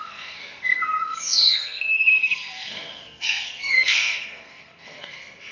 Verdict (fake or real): fake